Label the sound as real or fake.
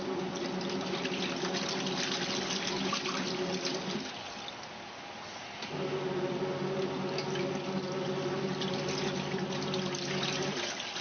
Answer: real